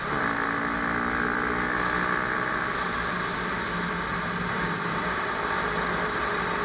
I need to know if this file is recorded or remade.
recorded